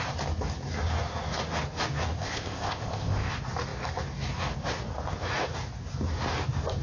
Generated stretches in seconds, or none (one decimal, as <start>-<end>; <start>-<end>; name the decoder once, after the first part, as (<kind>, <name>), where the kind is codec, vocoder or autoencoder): 2.2-3.3 (codec, ZipCodec)